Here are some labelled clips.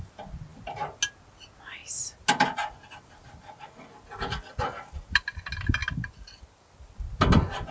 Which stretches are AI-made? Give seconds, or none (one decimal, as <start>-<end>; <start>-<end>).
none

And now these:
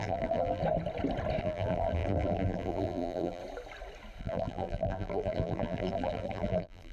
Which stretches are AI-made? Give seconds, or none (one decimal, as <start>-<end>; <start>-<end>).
0.0-0.6; 1.4-3.4; 4.2-6.9

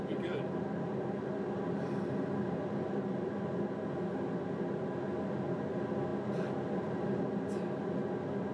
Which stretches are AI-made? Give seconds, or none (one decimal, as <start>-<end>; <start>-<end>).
none

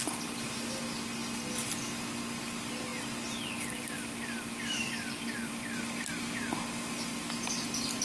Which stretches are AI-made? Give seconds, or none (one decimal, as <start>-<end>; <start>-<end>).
none

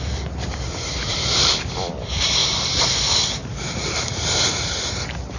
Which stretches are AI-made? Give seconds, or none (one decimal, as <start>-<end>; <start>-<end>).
1.1-1.6; 2.4-2.9; 3.4-4.9

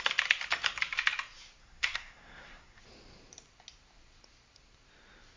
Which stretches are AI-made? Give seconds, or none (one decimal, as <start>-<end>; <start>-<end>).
1.6-2.8

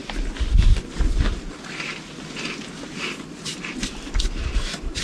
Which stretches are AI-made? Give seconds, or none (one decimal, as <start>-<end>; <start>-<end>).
3.0-3.5; 4.5-5.0